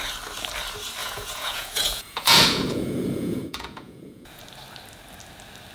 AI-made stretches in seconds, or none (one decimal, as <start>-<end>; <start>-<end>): 1.0-4.4